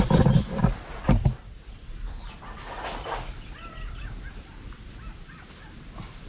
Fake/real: fake